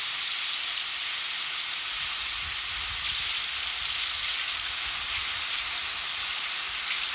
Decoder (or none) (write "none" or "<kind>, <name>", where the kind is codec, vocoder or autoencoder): none